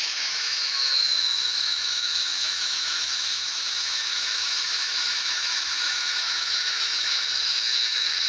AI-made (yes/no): yes